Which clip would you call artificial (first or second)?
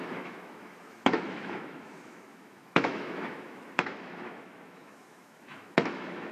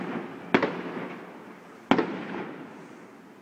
first